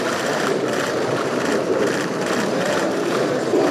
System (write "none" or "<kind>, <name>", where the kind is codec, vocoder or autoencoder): vocoder, BigVGAN v2